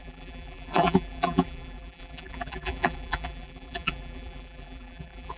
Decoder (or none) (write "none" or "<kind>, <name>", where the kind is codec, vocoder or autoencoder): vocoder, BigVGAN v2